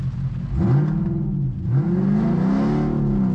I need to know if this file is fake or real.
real